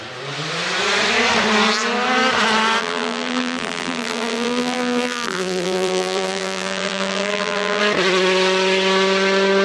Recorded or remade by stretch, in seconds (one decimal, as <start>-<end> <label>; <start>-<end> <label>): 0.0-2.8 recorded; 2.8-7.8 remade; 7.8-9.6 recorded